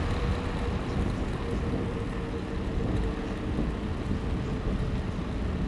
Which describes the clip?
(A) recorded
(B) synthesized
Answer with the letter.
A